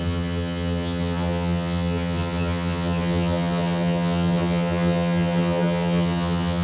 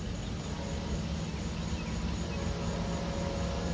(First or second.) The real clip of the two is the second